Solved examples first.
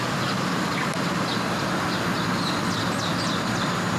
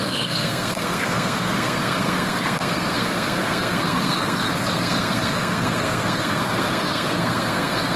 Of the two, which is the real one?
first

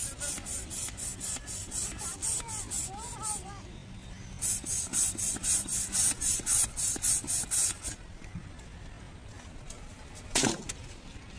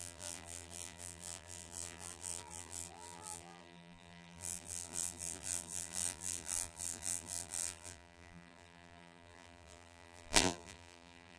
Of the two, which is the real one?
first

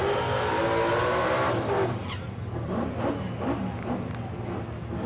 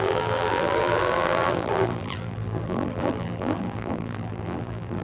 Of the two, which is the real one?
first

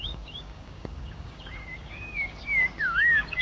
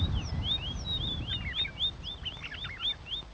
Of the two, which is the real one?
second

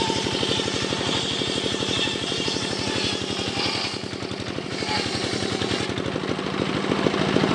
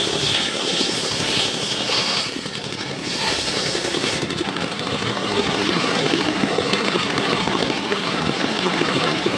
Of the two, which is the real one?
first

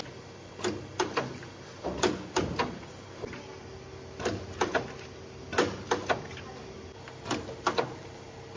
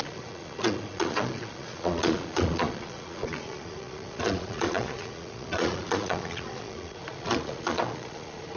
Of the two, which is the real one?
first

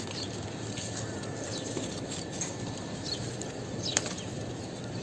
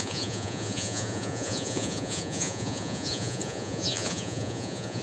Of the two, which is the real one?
first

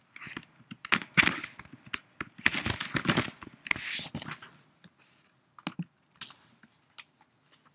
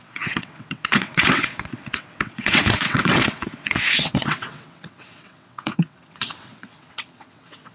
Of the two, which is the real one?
first